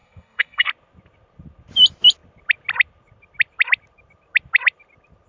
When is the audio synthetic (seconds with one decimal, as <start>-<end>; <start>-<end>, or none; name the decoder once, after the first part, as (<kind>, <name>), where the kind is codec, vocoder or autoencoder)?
0.0-0.7 (codec, SNAC)